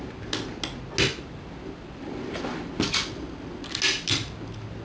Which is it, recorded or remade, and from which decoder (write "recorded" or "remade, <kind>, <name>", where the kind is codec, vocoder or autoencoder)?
recorded